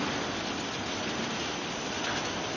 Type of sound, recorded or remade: recorded